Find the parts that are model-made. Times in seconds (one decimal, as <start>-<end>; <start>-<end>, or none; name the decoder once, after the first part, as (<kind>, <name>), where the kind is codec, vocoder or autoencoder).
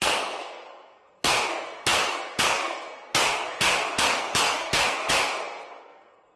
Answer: 0.0-6.4 (codec, SNAC)